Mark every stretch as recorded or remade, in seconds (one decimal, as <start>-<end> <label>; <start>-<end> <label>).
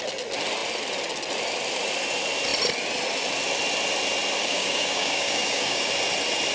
0.0-4.4 recorded; 4.4-5.9 remade; 5.9-6.5 recorded